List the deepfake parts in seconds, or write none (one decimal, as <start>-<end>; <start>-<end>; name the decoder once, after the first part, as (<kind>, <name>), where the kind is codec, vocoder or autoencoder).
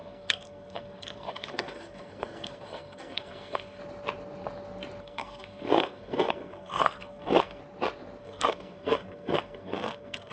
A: 0.0-3.8 (codec, SNAC); 5.0-7.6; 8.2-10.3